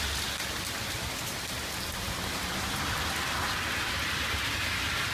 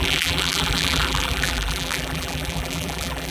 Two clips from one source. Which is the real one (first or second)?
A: first